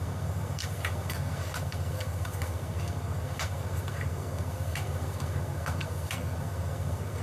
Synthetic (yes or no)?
yes